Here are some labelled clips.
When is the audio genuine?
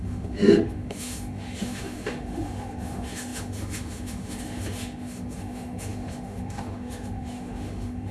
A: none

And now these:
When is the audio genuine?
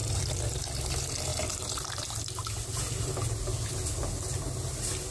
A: 0.5-1.3; 4.4-5.1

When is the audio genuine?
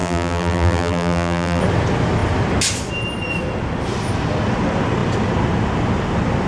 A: 1.6-6.5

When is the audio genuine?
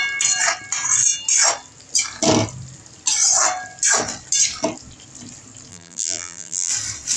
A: 0.0-5.7; 6.7-7.2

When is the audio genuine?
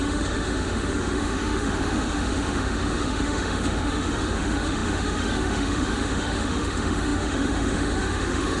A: none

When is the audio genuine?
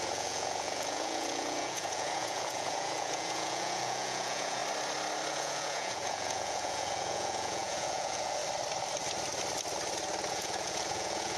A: 4.6-5.3; 8.4-10.3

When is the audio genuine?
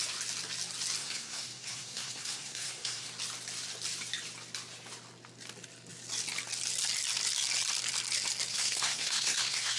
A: 0.0-1.0; 3.1-8.5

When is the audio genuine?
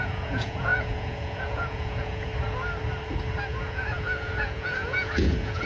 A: 2.3-3.5